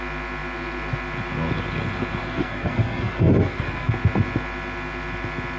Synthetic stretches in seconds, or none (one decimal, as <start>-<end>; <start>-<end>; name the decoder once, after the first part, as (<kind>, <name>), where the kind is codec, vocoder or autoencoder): 2.2-3.9 (codec, SNAC)